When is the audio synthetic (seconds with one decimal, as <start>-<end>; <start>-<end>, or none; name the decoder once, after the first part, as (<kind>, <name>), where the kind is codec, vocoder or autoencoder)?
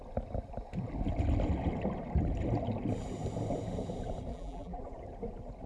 4.3-4.8 (vocoder, BigVGAN v2)